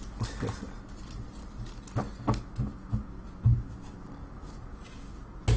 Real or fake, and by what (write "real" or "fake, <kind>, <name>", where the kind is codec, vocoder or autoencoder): real